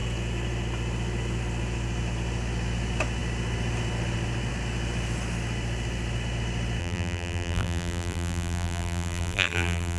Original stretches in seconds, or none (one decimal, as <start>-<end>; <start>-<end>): 0.0-6.8